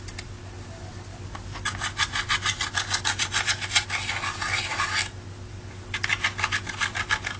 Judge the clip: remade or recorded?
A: recorded